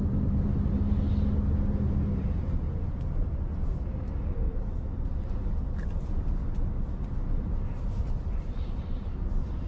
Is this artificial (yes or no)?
no